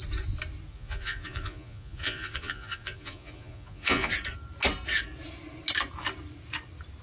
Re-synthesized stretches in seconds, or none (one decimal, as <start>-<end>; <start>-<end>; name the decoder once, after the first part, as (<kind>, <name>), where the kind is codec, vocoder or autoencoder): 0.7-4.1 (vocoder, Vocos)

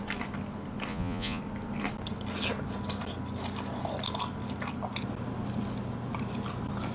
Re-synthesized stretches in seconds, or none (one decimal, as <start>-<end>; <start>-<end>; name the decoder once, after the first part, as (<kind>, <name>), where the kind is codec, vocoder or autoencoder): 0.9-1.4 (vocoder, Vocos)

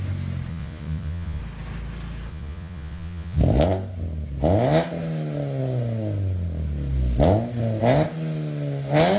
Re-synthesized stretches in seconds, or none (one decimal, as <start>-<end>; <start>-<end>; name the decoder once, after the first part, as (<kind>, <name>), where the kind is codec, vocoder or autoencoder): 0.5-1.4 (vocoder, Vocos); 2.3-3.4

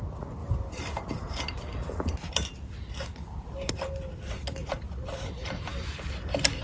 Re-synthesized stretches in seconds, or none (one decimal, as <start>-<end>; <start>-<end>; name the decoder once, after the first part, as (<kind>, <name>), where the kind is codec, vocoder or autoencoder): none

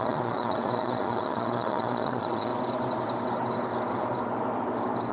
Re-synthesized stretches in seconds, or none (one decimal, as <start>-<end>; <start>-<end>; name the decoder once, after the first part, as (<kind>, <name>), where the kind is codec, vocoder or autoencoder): 0.0-2.5 (vocoder, Vocos)